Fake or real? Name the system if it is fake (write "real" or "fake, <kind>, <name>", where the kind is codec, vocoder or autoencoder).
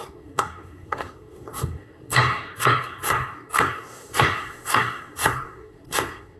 fake, codec, SNAC